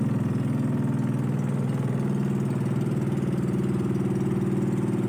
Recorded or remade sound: recorded